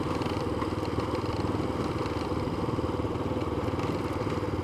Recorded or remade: remade